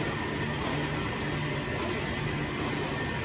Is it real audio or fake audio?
real